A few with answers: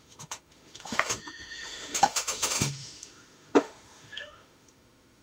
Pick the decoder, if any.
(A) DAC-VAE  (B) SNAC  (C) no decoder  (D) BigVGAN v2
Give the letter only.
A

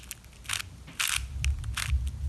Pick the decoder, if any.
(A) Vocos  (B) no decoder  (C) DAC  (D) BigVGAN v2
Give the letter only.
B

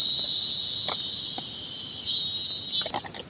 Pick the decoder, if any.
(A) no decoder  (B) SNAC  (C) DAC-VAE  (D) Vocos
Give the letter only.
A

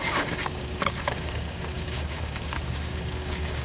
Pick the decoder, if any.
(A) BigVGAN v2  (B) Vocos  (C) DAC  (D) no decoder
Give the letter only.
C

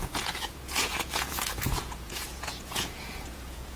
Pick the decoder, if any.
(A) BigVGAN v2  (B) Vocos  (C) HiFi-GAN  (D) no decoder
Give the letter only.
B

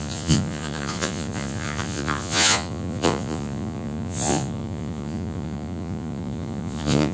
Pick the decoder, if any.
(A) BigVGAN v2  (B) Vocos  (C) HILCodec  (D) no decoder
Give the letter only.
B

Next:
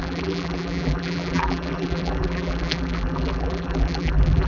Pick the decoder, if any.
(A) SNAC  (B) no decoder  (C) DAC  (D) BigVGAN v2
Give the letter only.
D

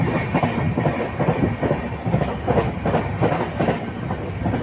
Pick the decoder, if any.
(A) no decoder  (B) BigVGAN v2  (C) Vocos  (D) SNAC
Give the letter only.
A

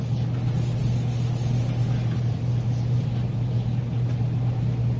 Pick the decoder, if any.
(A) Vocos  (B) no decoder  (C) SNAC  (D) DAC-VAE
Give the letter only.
B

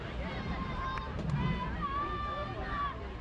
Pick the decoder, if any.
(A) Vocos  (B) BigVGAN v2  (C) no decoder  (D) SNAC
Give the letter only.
B